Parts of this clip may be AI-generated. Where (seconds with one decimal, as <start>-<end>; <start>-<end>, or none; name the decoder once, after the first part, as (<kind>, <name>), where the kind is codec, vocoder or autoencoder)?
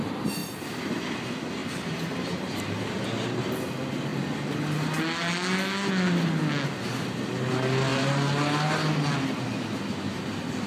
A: 1.6-3.1 (vocoder, BigVGAN v2); 7.9-9.4